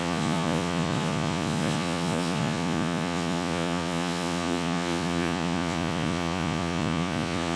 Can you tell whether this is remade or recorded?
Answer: remade